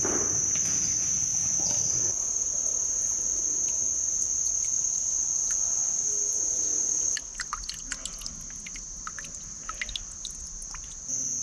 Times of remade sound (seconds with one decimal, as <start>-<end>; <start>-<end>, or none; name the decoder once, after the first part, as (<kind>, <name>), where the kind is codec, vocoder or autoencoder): 1.3-1.9 (vocoder, BigVGAN v2)